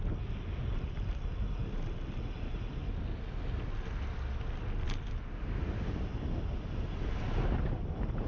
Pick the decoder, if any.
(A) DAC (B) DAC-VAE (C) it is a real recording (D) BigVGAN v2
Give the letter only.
C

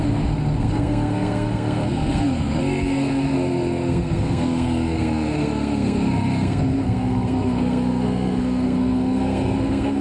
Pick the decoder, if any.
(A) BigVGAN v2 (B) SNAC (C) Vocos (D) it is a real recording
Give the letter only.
B